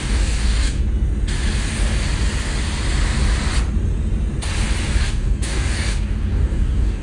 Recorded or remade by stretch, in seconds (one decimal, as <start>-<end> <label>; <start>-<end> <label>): 0.0-0.8 remade; 0.8-5.0 recorded; 5.0-7.0 remade